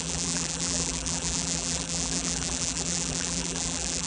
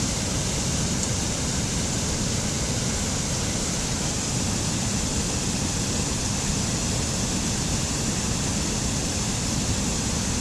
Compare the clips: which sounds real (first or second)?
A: second